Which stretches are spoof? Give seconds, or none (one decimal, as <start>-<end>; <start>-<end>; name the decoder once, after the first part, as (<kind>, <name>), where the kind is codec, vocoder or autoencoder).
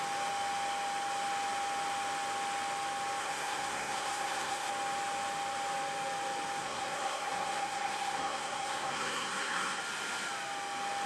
3.2-4.7 (codec, SNAC); 6.6-9.8